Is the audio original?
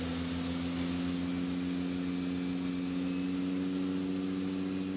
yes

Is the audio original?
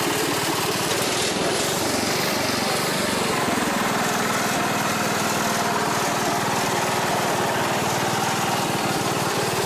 yes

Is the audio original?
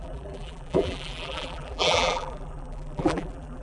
no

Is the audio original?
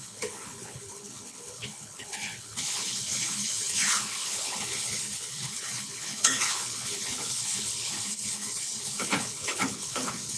no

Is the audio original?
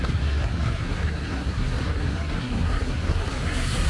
no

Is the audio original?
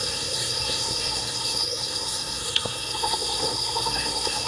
no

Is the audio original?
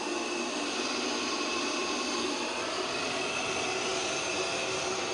yes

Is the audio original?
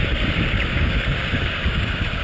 no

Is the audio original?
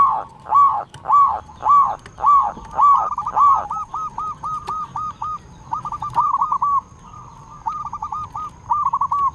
yes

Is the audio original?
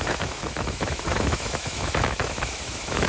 no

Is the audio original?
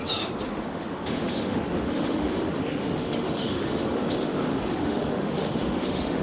no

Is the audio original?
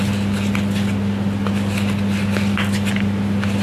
yes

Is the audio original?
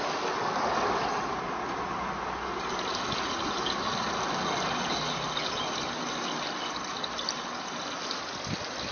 yes